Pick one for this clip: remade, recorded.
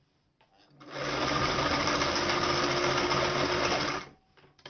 recorded